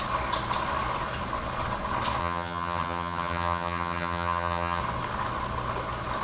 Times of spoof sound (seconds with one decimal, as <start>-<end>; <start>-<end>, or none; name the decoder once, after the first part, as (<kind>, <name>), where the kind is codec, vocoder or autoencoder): 2.2-4.8 (vocoder, HiFi-GAN)